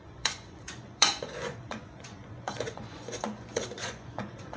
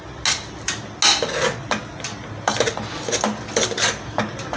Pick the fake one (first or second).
first